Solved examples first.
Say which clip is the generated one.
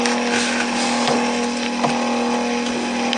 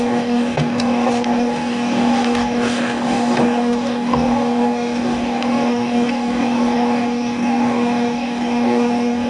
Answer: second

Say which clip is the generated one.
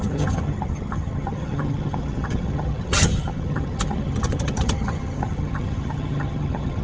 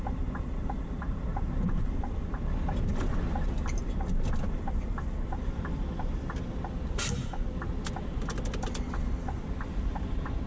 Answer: first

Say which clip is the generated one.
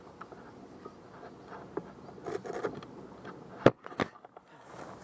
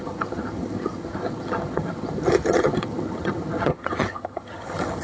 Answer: second